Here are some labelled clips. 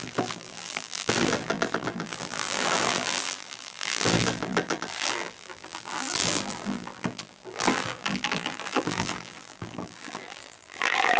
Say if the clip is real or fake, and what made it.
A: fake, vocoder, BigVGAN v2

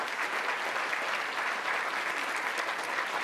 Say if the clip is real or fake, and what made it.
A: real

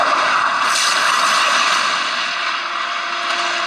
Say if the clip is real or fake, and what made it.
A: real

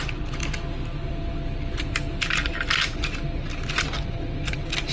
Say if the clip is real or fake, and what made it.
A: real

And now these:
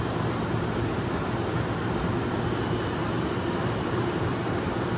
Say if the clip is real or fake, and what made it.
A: fake, vocoder, BigVGAN v2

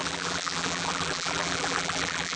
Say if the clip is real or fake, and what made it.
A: fake, vocoder, BigVGAN v2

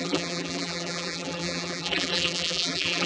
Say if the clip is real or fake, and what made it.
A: fake, vocoder, BigVGAN v2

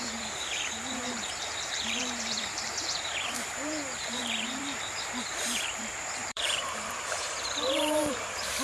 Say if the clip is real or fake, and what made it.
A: fake, vocoder, BigVGAN v2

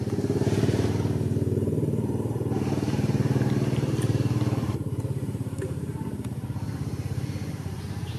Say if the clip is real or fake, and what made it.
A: fake, vocoder, BigVGAN v2